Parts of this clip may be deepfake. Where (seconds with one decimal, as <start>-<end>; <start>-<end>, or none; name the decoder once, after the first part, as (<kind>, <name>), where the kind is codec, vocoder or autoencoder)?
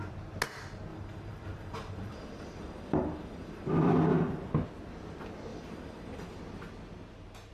0.9-3.7 (vocoder, BigVGAN v2); 5.5-6.4